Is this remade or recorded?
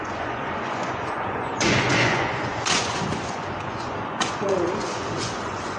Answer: remade